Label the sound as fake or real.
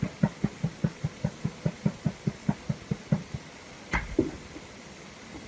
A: real